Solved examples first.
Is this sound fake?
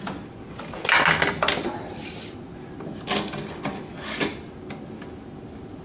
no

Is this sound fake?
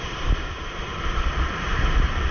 no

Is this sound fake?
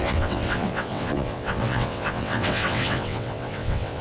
yes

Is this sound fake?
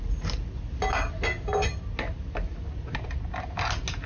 no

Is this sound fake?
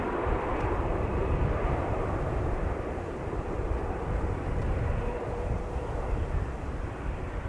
yes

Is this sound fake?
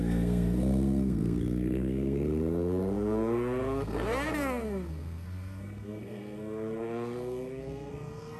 yes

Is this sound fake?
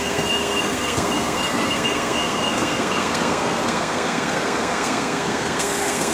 yes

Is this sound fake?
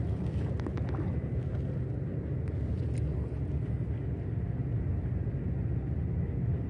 no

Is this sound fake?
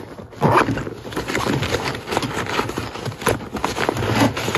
no